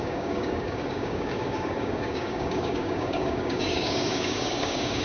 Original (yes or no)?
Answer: no